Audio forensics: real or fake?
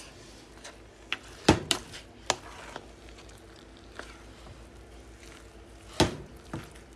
real